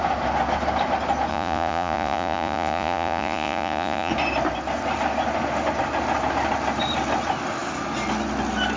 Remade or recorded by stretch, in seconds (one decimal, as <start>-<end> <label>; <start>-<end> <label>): 0.0-1.3 recorded; 1.3-4.1 remade; 4.1-8.8 recorded